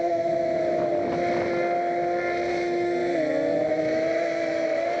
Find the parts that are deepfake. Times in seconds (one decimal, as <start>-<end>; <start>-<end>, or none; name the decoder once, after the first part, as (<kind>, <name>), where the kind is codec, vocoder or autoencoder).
0.0-0.9 (autoencoder, DAC-VAE); 2.5-3.0; 3.7-5.0